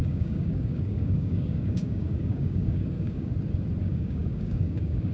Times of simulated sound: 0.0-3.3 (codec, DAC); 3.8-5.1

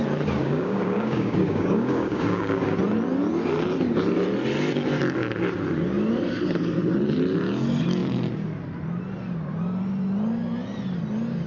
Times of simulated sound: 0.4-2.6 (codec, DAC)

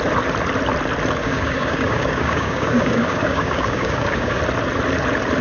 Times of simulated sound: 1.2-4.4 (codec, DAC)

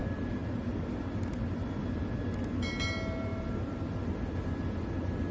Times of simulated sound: none